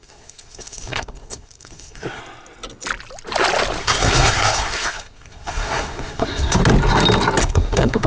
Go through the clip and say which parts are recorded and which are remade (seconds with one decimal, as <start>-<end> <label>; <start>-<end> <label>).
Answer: 0.0-2.2 remade; 2.2-3.8 recorded; 3.8-6.6 remade; 6.6-7.4 recorded; 7.4-8.1 remade